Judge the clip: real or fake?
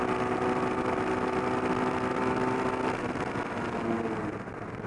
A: real